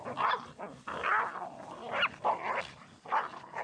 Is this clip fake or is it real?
real